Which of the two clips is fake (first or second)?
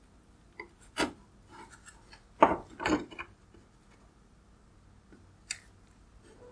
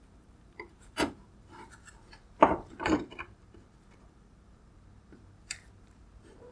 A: second